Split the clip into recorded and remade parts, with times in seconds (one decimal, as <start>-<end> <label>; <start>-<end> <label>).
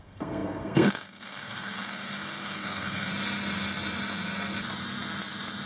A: 0.0-3.1 remade; 3.1-5.7 recorded